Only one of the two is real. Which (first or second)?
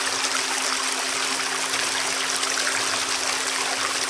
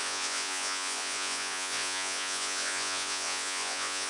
first